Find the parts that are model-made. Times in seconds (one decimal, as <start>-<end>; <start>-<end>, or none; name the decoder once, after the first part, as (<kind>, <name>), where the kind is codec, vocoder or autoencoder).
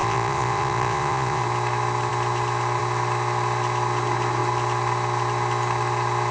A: 0.0-1.4 (vocoder, Vocos)